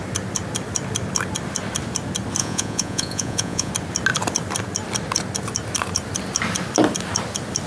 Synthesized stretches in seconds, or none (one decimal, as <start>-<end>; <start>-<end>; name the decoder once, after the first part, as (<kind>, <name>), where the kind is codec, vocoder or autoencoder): 2.4-3.7 (vocoder, Vocos)